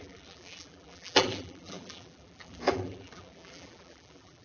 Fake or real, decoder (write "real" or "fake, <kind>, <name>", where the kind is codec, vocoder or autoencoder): fake, vocoder, BigVGAN v2